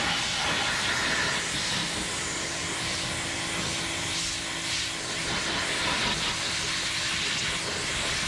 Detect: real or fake real